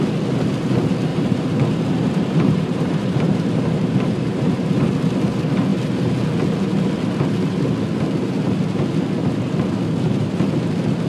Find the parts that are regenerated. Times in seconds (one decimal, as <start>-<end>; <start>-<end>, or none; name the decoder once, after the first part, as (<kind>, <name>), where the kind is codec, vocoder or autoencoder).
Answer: 1.1-4.9 (vocoder, BigVGAN v2)